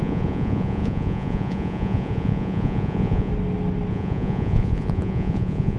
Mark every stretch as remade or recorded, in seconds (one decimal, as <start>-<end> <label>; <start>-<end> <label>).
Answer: 0.0-3.3 remade; 3.3-3.9 recorded; 3.9-5.8 remade